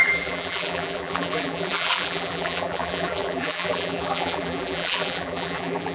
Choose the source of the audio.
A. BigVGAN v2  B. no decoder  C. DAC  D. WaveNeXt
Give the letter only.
A